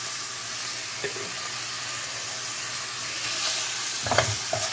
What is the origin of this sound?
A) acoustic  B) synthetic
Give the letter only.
A